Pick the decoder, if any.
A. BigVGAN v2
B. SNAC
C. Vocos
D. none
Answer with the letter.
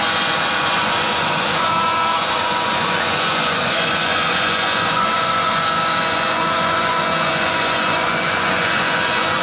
C